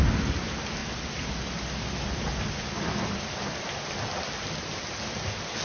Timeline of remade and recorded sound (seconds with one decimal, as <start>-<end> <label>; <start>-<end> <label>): 0.0-5.6 recorded